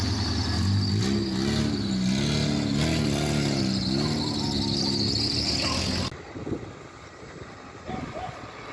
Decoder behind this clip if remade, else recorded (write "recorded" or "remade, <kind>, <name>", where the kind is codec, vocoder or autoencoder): recorded